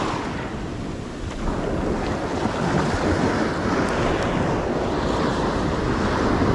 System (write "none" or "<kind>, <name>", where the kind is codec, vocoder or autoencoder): none